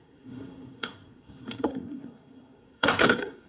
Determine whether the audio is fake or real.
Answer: fake